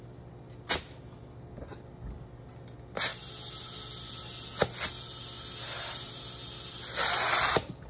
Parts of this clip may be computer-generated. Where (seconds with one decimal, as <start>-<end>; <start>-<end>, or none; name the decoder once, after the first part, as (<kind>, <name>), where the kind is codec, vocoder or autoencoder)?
none